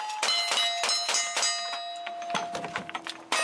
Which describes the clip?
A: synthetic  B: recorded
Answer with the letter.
B